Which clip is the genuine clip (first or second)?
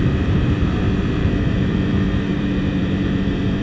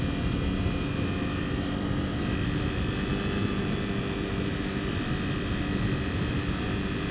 second